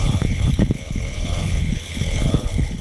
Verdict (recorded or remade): remade